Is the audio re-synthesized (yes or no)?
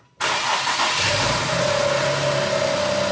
no